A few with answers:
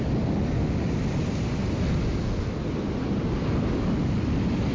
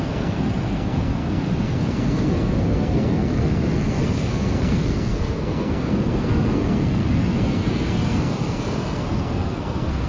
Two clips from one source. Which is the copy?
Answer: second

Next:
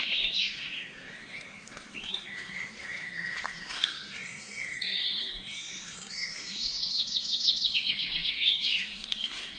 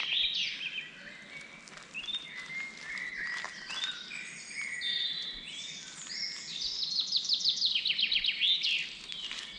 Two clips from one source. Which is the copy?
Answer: first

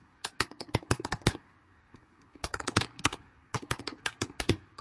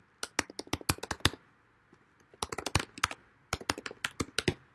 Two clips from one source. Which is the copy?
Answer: first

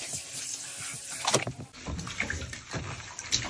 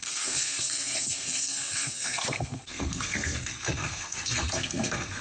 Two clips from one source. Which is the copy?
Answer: second